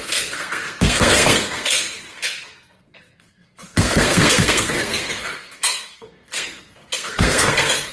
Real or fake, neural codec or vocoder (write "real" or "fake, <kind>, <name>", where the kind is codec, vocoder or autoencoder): fake, codec, SNAC